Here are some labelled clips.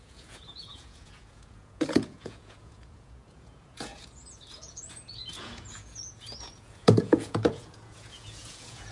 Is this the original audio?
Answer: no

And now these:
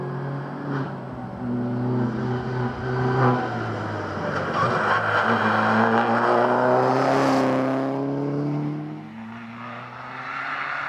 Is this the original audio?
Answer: yes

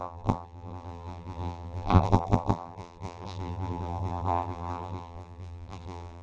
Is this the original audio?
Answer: no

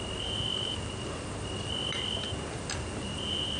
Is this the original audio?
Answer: yes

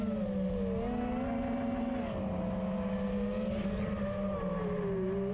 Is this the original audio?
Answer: yes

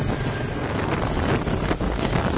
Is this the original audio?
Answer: yes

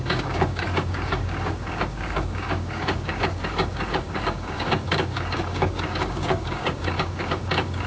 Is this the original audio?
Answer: no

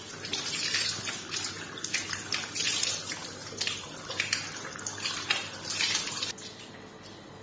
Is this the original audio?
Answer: yes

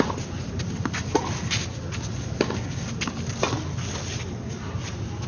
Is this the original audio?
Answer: yes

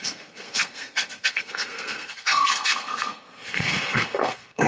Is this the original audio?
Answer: no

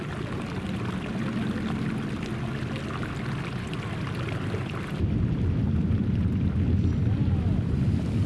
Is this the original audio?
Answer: yes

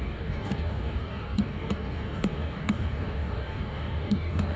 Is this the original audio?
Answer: no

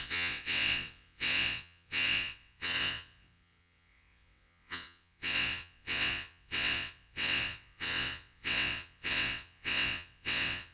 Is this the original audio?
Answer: no